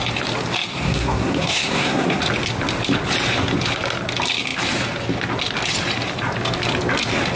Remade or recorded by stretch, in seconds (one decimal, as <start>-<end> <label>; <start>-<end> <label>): 0.0-0.7 recorded; 0.7-2.2 remade; 2.2-7.4 recorded